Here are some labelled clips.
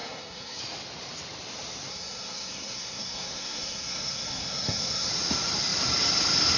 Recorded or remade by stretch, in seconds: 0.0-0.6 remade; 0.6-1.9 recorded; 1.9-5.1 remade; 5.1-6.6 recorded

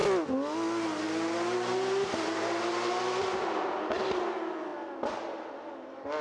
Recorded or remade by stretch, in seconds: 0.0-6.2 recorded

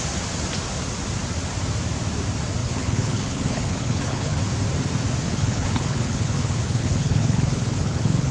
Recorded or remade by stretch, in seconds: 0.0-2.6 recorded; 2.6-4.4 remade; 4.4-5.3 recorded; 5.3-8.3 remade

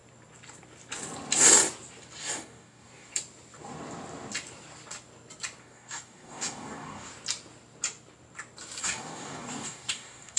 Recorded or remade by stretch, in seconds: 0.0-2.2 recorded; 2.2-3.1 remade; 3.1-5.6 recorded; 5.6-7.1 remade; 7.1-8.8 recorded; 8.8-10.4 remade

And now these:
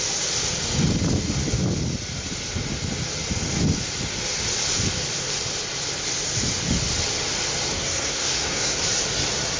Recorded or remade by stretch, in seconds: 0.0-7.7 recorded; 7.7-8.8 remade; 8.8-9.6 recorded

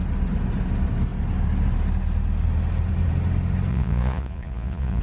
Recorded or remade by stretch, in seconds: 0.0-3.7 recorded; 3.7-5.0 remade

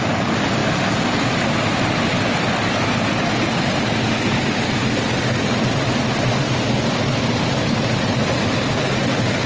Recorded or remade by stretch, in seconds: 0.0-9.5 recorded

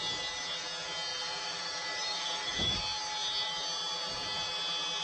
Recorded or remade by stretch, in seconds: 0.0-1.1 recorded; 1.1-2.8 remade; 2.8-5.0 recorded